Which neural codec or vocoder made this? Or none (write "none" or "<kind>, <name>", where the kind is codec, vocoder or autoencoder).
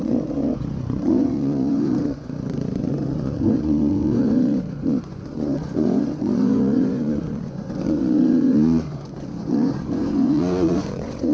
vocoder, Vocos